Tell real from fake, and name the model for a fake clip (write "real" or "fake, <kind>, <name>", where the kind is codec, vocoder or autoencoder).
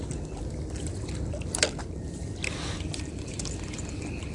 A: real